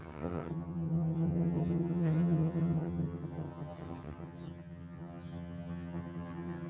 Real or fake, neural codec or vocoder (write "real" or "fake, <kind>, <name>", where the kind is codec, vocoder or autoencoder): fake, vocoder, HiFi-GAN